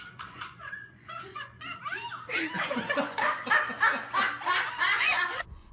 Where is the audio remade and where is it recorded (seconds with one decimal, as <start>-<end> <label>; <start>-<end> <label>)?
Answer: 0.0-1.5 remade; 1.5-2.6 recorded; 2.6-3.4 remade; 3.4-4.7 recorded; 4.7-5.7 remade